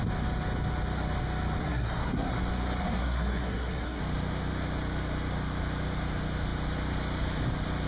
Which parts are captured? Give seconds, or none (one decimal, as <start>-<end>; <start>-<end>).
0.0-1.6; 2.4-2.8; 4.0-7.9